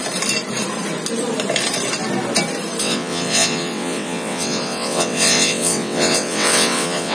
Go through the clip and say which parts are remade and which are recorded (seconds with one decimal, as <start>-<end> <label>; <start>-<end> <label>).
0.0-2.8 recorded; 2.8-7.1 remade